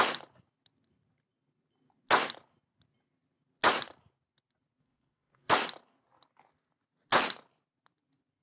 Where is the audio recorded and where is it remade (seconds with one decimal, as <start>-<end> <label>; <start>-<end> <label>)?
0.0-4.8 recorded; 4.8-5.5 remade; 5.5-8.4 recorded